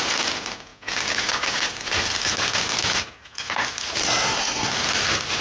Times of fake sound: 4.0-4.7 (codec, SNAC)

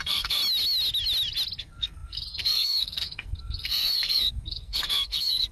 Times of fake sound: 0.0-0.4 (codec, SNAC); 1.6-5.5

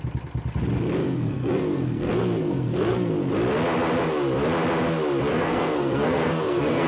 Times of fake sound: 1.0-3.1 (codec, SNAC); 5.3-6.9